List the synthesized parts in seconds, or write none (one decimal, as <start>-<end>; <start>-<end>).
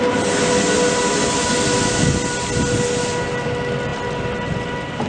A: none